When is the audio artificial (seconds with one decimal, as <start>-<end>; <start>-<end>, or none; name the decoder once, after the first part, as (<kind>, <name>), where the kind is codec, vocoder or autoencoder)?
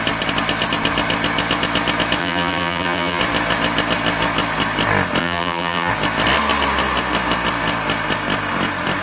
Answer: 2.2-3.2 (vocoder, BigVGAN v2); 5.2-5.9